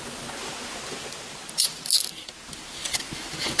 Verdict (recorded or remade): recorded